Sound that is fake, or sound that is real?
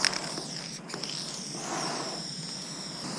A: real